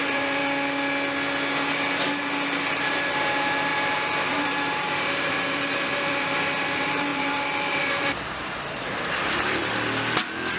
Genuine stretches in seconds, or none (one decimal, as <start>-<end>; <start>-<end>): 0.4-2.8; 9.6-10.6